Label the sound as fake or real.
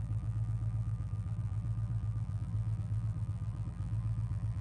fake